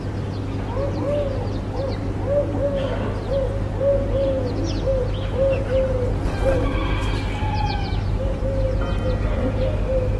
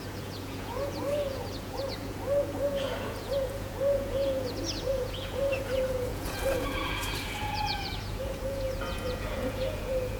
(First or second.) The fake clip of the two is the second